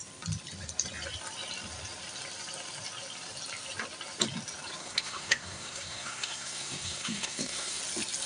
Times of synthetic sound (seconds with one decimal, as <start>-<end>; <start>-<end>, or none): 4.8-7.8